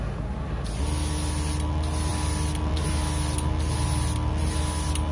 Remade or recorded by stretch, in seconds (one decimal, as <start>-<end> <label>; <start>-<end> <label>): 0.0-5.1 recorded